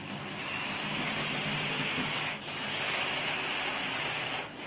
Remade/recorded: recorded